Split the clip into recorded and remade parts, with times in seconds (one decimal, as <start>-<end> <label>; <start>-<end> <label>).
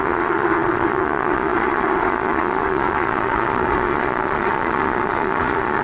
0.0-5.8 remade